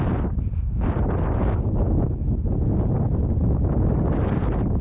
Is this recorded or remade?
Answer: recorded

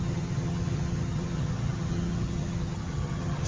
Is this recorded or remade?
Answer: remade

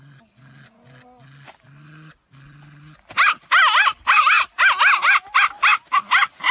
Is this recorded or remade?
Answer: recorded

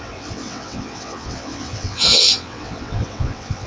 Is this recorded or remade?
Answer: remade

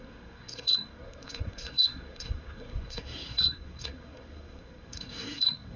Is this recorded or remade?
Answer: remade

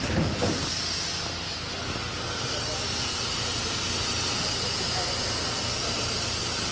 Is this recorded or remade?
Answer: recorded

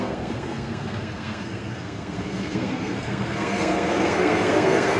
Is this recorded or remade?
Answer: remade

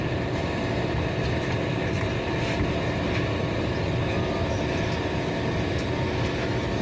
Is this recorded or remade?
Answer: recorded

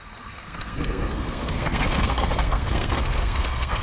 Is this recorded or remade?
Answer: remade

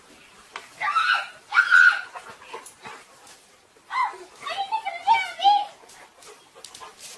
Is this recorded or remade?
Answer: recorded